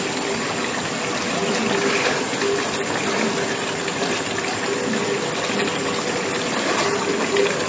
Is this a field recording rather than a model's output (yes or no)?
yes